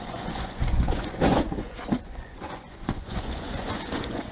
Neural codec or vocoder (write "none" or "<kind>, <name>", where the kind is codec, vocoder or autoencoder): vocoder, Vocos